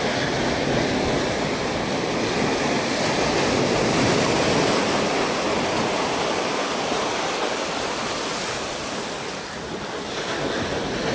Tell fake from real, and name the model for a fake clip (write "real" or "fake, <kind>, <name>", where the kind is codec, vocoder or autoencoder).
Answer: real